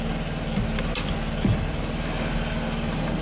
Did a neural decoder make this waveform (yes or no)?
no